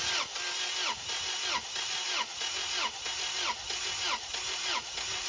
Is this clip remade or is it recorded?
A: recorded